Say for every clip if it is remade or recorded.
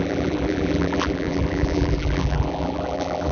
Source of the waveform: remade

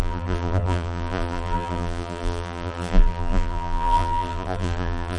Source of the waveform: remade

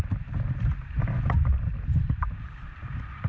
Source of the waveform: remade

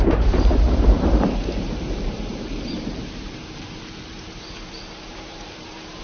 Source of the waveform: remade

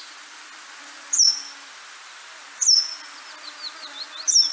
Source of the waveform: recorded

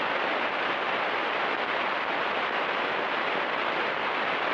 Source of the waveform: remade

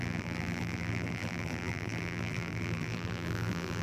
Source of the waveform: remade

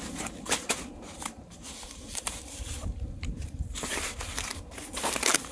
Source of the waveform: remade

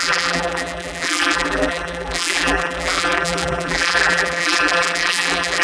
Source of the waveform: remade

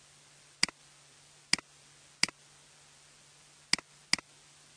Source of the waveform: recorded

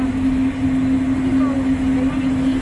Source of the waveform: recorded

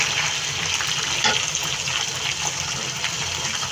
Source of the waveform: recorded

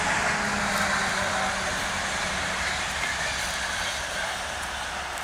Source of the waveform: recorded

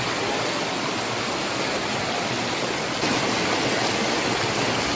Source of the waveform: recorded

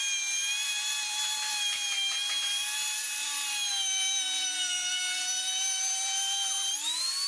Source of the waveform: remade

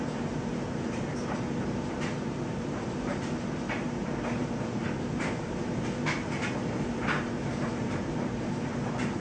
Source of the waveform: remade